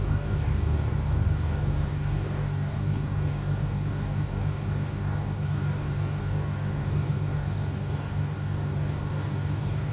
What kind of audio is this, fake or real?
fake